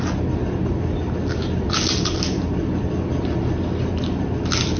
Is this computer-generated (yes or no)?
no